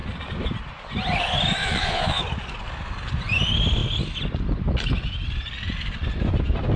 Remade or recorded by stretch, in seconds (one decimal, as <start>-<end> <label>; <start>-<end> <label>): 0.0-1.6 recorded; 1.6-2.2 remade; 2.2-6.8 recorded